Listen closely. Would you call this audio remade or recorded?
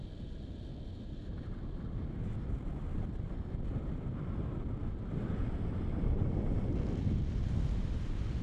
recorded